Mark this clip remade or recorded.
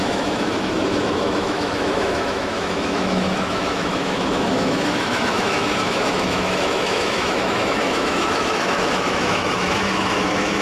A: remade